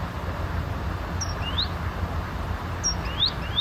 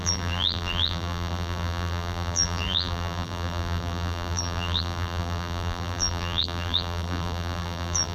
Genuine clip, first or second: first